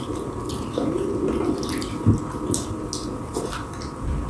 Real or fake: real